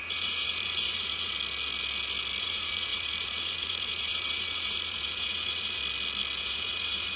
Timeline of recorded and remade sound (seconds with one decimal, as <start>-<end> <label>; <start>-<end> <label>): 0.0-1.3 remade; 1.3-2.4 recorded; 2.4-5.8 remade; 5.8-6.4 recorded; 6.4-7.2 remade